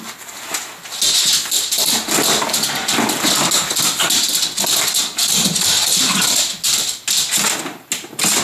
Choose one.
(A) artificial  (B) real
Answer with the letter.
B